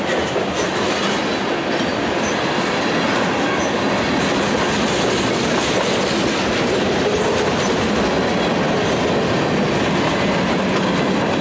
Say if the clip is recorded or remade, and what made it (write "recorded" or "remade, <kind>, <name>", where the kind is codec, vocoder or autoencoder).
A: recorded